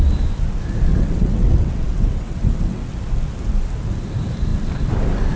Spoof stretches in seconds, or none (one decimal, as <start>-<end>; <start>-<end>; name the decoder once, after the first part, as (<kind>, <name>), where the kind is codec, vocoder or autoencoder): 0.9-2.9 (vocoder, WaveNeXt)